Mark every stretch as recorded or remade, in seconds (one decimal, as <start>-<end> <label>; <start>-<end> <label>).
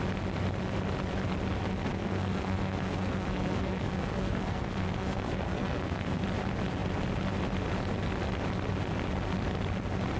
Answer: 0.0-1.9 recorded; 1.9-6.2 remade; 6.2-10.2 recorded